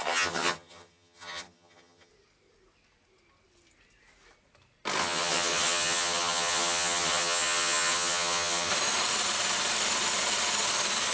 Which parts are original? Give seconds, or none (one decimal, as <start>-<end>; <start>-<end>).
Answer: 2.1-5.0; 8.7-11.1